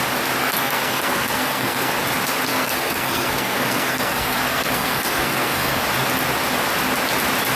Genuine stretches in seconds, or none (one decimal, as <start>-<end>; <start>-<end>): 0.0-0.4; 1.9-2.5; 5.8-7.6